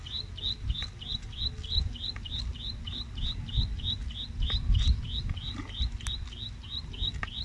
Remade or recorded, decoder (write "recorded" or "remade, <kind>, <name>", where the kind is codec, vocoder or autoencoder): recorded